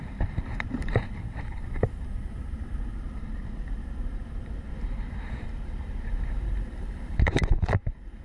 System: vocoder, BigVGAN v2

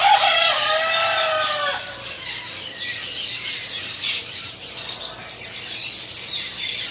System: vocoder, BigVGAN v2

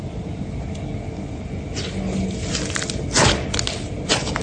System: none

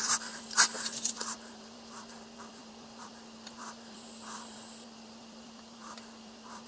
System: vocoder, BigVGAN v2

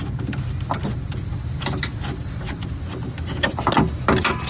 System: none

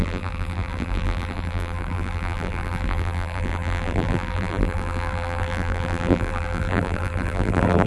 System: vocoder, BigVGAN v2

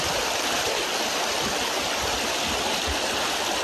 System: none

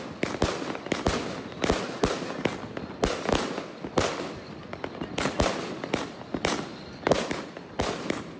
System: none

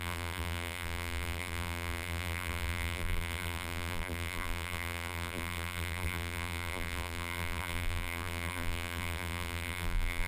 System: vocoder, BigVGAN v2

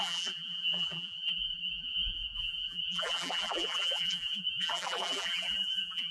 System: vocoder, BigVGAN v2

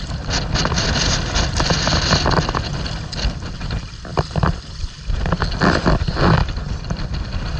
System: none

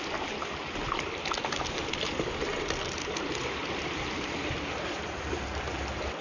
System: none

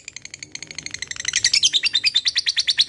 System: none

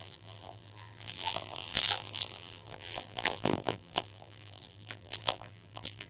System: vocoder, BigVGAN v2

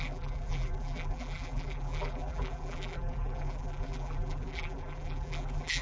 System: vocoder, BigVGAN v2